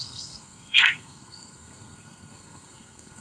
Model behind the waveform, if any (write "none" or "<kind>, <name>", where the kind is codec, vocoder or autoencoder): codec, SNAC